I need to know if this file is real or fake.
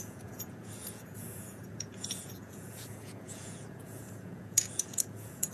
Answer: fake